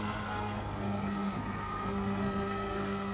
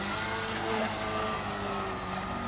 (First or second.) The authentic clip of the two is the second